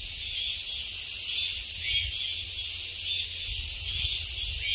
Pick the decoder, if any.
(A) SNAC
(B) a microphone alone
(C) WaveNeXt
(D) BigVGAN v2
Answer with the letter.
B